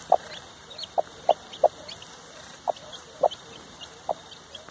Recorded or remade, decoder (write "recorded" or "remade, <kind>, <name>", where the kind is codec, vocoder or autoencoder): recorded